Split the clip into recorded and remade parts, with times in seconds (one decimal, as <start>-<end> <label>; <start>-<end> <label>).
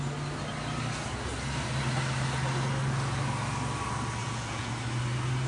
0.0-4.2 recorded; 4.2-4.7 remade; 4.7-5.5 recorded